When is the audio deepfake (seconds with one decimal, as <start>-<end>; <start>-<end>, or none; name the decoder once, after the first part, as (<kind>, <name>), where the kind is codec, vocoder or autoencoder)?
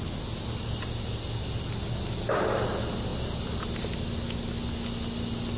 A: none